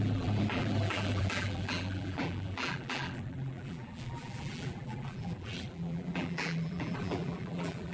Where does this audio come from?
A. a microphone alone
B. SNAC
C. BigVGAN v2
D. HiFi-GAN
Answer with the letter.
C